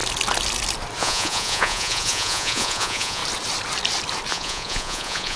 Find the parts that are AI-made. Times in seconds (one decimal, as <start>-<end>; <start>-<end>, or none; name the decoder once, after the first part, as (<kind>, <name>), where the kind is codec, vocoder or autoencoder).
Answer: 1.0-3.2 (vocoder, Vocos); 4.3-5.4